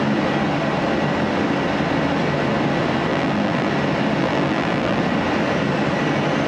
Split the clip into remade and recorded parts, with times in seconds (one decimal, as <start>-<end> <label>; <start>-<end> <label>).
0.0-3.1 recorded; 3.1-3.7 remade; 3.7-4.2 recorded; 4.2-5.0 remade; 5.0-6.5 recorded